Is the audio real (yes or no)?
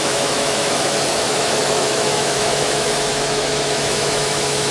no